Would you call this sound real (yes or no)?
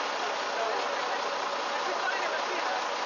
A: yes